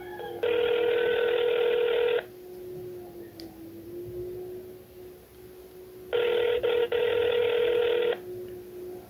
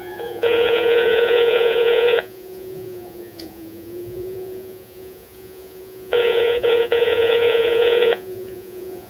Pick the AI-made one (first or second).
second